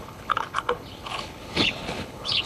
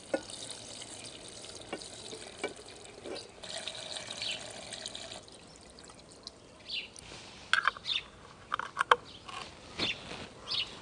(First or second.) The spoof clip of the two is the first